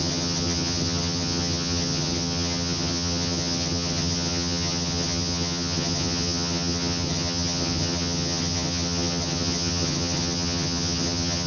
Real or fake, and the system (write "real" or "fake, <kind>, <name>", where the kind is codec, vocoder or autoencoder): fake, vocoder, HiFi-GAN